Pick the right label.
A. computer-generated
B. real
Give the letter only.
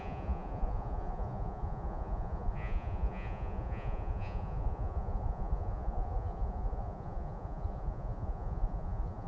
A